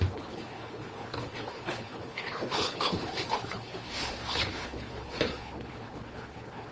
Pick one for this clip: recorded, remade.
remade